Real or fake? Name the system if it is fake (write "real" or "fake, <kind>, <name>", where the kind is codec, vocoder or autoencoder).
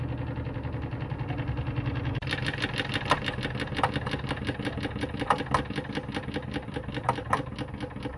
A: real